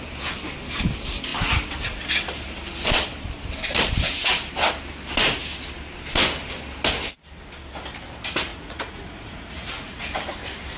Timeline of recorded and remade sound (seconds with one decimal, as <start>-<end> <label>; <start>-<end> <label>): 0.0-8.5 recorded; 8.5-9.9 remade; 9.9-10.8 recorded